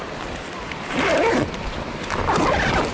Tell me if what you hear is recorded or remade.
recorded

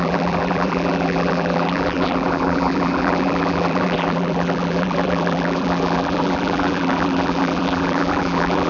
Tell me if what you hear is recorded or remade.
remade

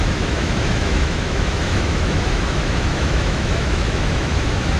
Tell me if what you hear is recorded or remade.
remade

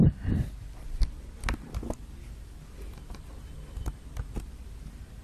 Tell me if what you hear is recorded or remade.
recorded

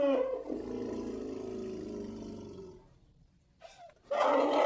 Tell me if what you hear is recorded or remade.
recorded